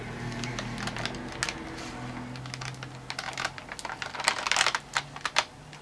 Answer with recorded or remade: recorded